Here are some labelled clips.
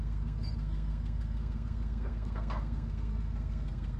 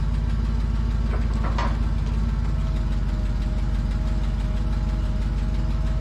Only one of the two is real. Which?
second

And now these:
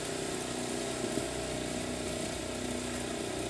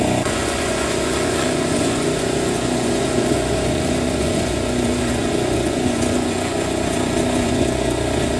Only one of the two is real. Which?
first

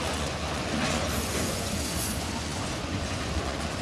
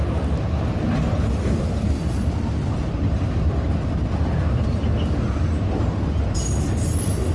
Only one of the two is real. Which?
second